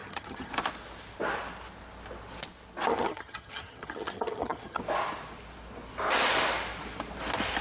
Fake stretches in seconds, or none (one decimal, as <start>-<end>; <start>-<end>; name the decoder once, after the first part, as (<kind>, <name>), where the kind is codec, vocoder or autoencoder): 0.0-0.5 (vocoder, HiFi-GAN); 2.9-4.8